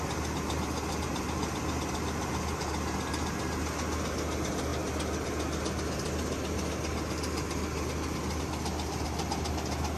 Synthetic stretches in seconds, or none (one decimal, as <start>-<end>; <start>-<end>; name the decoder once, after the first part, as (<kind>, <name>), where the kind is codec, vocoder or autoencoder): none